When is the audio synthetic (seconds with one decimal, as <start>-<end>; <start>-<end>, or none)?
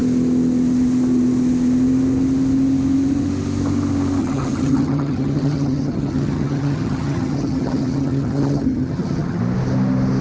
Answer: 4.2-9.4